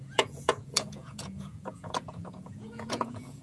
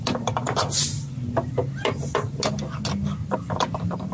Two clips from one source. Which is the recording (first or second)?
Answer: second